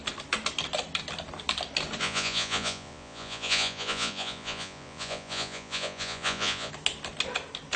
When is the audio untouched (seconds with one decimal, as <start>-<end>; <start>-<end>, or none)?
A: 0.0-2.0; 6.7-7.8